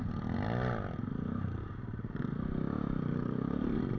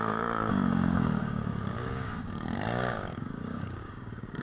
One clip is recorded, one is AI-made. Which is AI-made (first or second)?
second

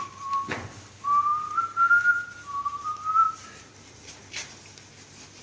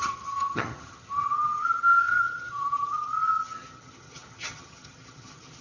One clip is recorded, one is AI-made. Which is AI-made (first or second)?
second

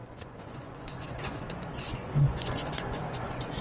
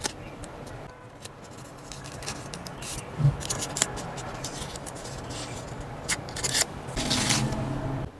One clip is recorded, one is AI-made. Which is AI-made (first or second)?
first